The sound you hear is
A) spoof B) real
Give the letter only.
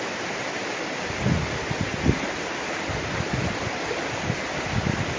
B